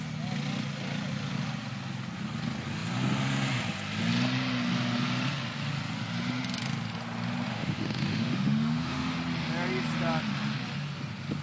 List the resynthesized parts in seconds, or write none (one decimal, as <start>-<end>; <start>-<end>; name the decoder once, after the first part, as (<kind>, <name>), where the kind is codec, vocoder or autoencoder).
7.5-9.1 (autoencoder, DAC-VAE)